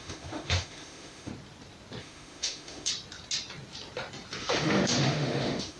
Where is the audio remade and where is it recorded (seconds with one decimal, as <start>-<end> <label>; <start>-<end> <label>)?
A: 0.0-1.3 remade; 1.3-2.0 recorded; 2.0-2.9 remade; 2.9-4.4 recorded; 4.4-5.8 remade